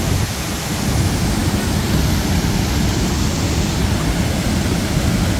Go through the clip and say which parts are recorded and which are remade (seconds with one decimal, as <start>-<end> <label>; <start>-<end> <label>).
0.0-5.4 recorded